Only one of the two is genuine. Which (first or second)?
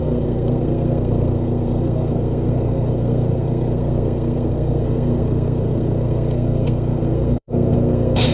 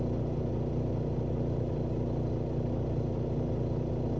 second